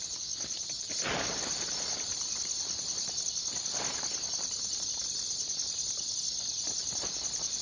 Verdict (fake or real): real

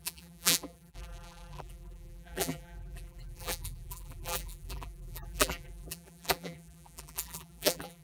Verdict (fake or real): fake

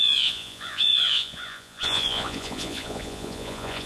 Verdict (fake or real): fake